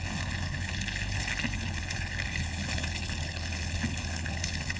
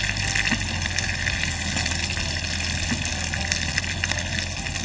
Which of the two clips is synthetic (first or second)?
first